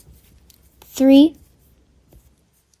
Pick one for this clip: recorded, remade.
recorded